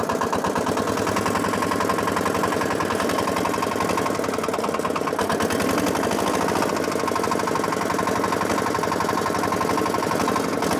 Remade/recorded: recorded